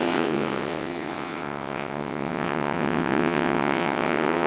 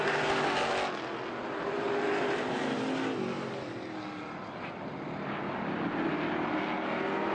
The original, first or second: second